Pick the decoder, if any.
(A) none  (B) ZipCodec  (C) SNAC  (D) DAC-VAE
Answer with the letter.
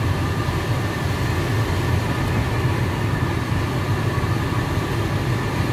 A